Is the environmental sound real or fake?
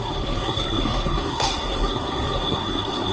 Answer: fake